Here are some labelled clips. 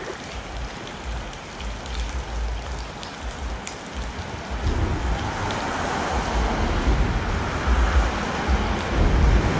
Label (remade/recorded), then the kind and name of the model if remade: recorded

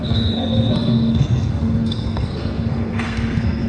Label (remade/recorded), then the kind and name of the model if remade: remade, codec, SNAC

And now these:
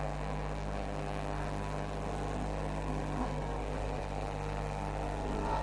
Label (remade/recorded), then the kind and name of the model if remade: remade, codec, SNAC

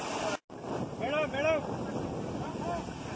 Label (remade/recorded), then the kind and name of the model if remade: recorded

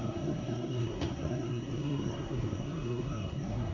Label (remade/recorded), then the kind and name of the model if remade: remade, codec, SNAC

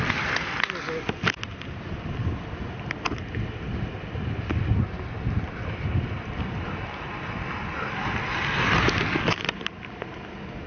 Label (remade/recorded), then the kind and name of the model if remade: recorded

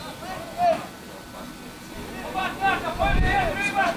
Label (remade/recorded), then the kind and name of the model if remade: recorded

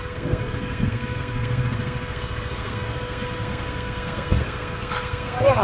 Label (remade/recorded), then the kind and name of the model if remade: remade, codec, SNAC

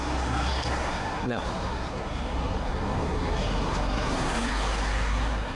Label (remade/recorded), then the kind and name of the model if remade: remade, codec, SNAC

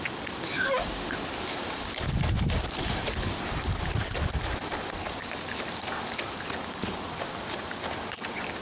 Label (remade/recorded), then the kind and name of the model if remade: recorded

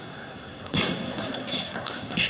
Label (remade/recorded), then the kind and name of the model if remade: remade, codec, SNAC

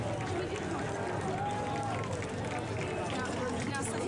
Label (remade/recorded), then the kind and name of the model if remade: recorded